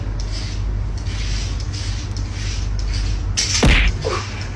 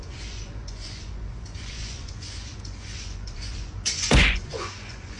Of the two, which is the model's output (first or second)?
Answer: second